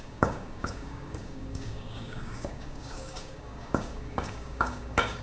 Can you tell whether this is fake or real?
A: fake